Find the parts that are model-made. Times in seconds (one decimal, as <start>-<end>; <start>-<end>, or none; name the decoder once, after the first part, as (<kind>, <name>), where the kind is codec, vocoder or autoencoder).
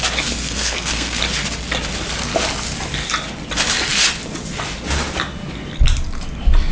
0.4-1.2 (codec, SNAC)